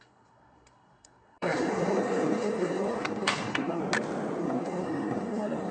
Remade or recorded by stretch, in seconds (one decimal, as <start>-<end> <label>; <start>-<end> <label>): 0.0-3.8 remade; 3.8-4.4 recorded; 4.4-5.7 remade